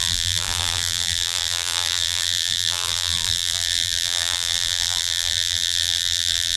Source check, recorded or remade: remade